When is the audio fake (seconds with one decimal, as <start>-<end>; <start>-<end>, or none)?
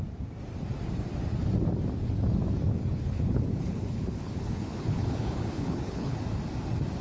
2.9-6.2